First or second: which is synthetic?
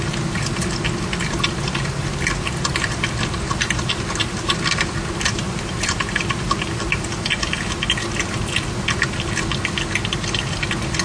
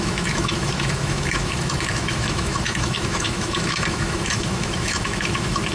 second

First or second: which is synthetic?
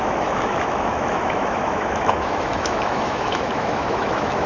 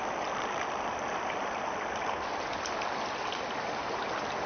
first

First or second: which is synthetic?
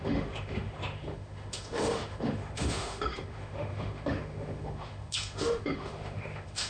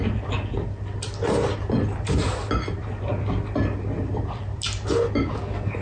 first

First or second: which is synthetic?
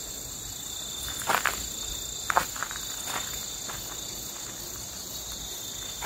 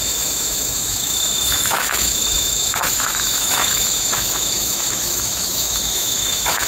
second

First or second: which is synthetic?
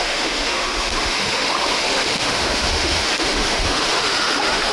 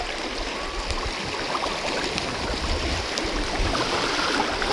first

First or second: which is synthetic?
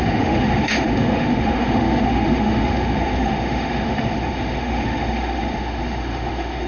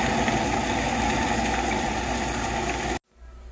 first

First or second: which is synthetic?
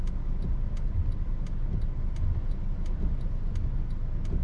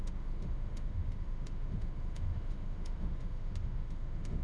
second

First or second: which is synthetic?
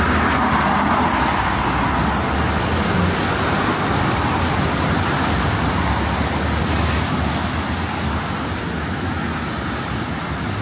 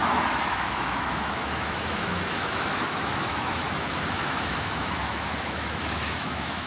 second